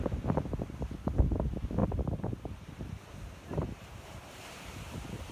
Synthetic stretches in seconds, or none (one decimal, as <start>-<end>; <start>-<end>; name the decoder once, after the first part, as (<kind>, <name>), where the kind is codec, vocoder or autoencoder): 1.8-5.3 (vocoder, BigVGAN v2)